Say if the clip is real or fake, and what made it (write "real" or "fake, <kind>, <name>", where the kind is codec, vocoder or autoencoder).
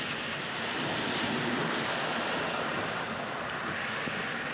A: real